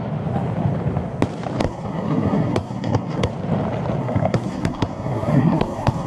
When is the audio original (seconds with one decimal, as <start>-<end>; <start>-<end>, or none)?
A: 0.0-1.6; 3.3-4.0